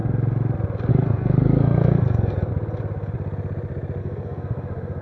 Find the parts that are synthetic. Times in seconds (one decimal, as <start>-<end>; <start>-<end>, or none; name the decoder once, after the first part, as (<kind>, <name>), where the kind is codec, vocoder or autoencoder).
0.9-2.5 (codec, SNAC); 4.0-5.0